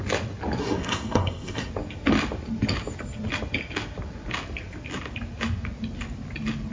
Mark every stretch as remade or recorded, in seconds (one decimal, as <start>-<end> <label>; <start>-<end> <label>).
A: 0.0-0.6 recorded; 0.6-1.7 remade; 1.7-6.7 recorded